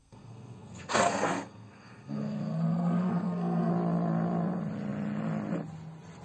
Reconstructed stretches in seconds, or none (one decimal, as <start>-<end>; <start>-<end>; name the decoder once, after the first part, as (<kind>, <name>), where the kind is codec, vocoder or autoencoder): 0.0-3.7 (codec, SNAC)